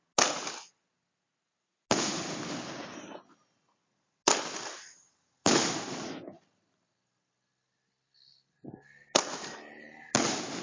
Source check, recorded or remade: recorded